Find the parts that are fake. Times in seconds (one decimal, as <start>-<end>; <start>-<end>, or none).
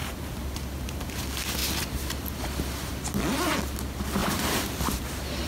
0.0-1.2; 4.2-5.0